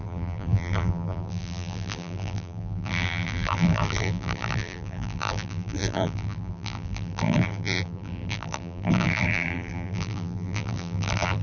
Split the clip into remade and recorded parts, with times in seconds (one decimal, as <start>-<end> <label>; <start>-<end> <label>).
0.0-11.4 remade